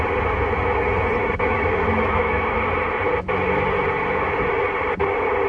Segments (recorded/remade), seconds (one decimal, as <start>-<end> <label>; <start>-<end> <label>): 0.0-1.2 recorded; 1.2-2.7 remade; 2.7-5.5 recorded